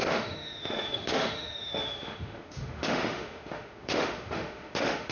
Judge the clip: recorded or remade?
remade